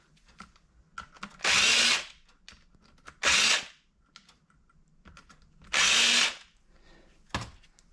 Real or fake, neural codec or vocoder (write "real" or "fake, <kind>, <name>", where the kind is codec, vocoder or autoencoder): real